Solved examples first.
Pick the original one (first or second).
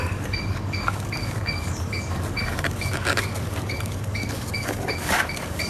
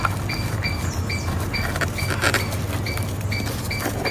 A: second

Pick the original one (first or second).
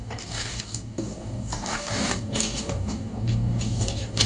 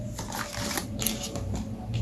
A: second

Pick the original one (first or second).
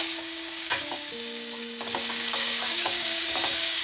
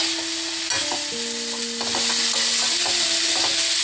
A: second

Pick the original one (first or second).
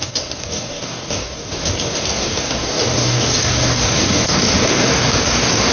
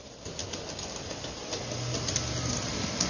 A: second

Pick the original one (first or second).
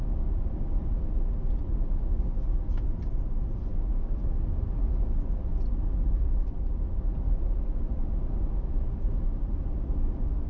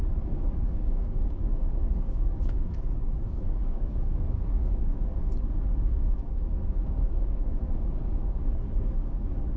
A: first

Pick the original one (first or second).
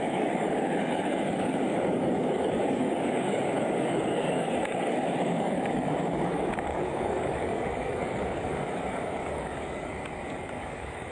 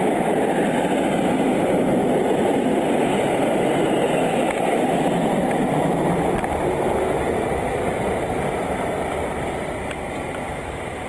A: second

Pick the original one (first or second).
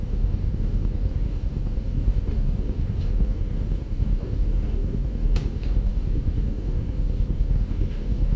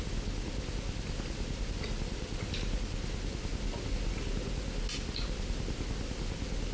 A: second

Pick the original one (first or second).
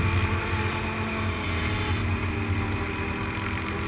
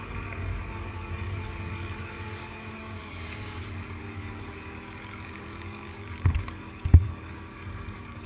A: first